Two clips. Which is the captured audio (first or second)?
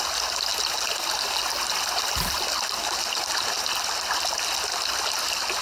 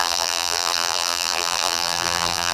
first